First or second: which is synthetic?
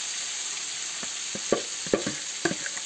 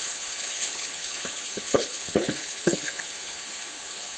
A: second